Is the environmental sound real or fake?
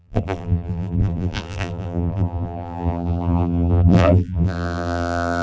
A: fake